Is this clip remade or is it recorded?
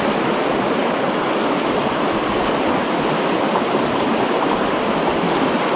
recorded